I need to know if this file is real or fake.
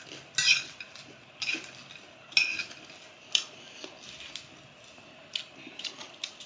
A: real